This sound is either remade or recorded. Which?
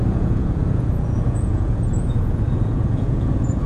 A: remade